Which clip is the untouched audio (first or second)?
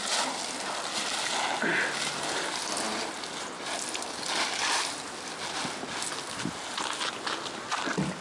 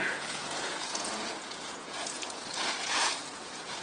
first